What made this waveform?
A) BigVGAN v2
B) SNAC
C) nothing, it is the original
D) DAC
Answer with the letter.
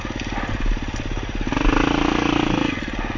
C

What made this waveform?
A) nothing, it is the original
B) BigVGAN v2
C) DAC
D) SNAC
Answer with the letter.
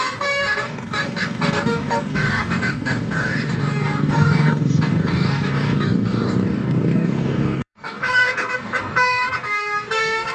C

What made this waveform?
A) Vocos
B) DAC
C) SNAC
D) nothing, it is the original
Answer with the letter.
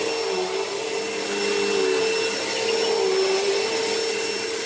D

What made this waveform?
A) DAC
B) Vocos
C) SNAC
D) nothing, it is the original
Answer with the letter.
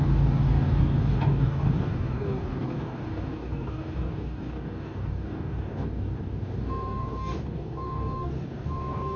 A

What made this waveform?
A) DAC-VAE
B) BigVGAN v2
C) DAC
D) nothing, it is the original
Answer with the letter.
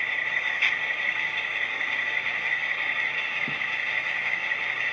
C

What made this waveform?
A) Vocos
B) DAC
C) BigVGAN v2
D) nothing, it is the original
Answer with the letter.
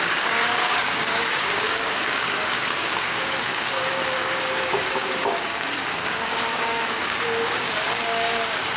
B